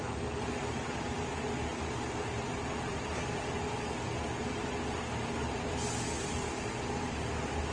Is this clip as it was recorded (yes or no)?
yes